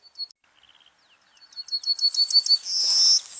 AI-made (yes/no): no